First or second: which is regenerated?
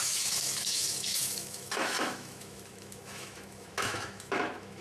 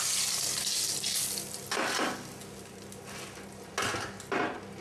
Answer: first